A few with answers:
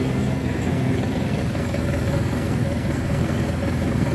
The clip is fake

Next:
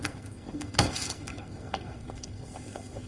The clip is fake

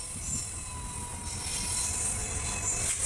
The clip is real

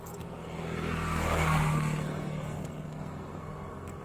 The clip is fake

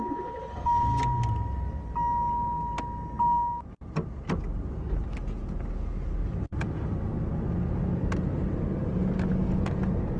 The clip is real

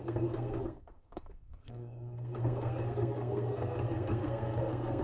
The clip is fake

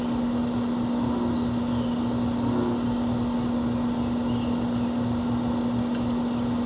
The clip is real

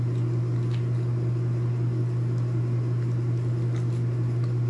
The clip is real